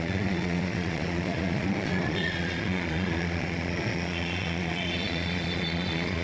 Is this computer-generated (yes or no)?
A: yes